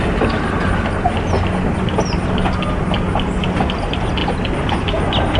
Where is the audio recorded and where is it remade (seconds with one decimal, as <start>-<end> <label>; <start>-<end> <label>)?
0.0-5.4 recorded